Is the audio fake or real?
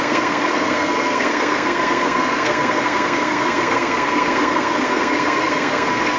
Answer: fake